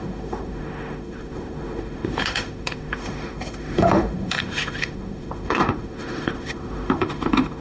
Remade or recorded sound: remade